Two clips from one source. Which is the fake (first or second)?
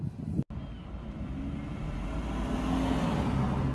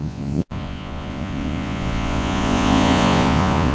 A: second